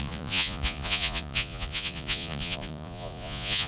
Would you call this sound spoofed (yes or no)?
yes